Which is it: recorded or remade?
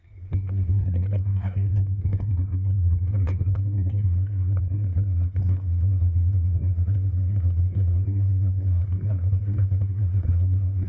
remade